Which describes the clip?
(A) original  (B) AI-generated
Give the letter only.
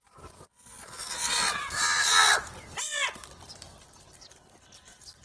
A